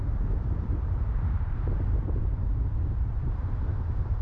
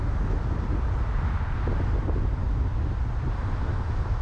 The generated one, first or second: first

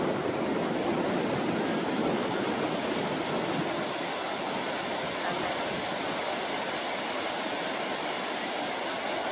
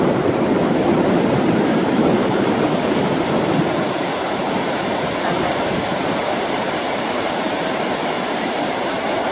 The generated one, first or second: second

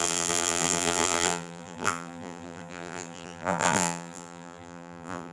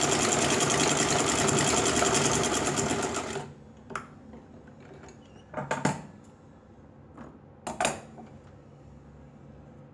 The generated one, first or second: first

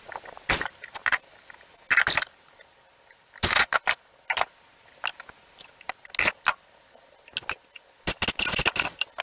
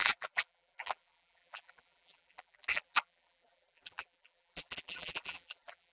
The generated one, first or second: second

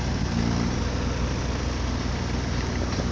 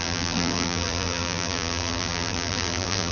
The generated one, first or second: second